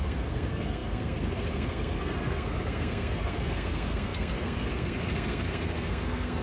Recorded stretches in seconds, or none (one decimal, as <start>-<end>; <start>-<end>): none